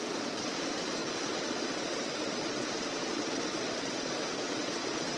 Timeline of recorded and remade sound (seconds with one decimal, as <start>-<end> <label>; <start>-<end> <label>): 0.0-5.2 remade